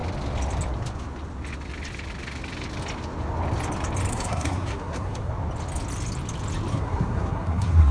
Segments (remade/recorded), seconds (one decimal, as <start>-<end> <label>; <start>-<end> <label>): 0.0-4.1 recorded; 4.1-5.3 remade; 5.3-6.7 recorded; 6.7-7.9 remade